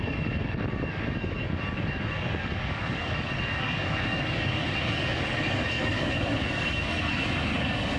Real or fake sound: fake